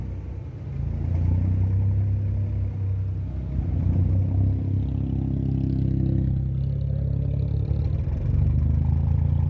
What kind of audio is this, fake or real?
real